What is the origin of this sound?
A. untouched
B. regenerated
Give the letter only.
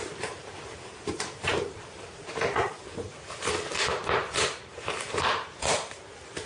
B